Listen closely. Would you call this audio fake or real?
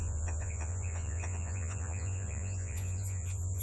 fake